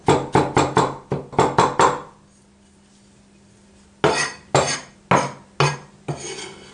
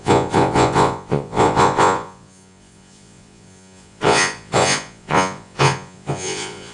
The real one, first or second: first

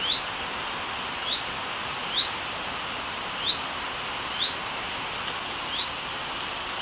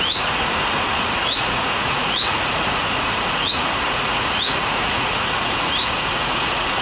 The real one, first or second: first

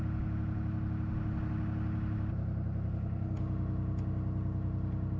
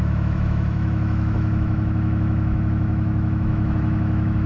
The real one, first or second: first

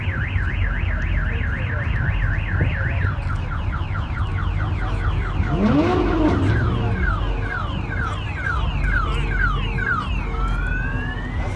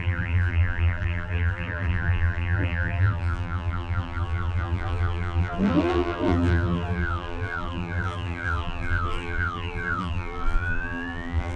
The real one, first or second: first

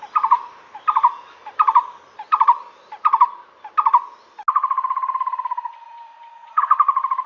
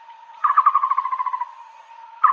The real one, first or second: first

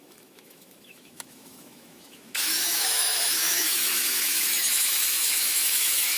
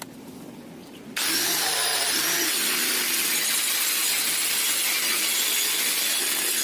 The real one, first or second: second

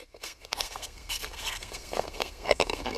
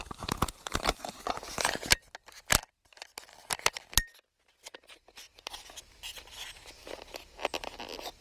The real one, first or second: second